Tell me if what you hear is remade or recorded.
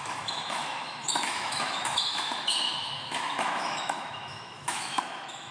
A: remade